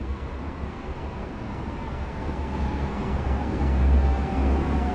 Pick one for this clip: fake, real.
fake